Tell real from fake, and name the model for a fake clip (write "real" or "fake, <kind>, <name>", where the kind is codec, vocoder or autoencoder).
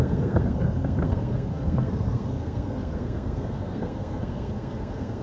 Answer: fake, codec, SNAC